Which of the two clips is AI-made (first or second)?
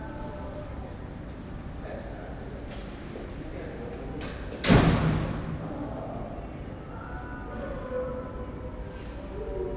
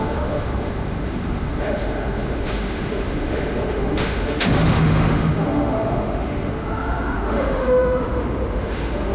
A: second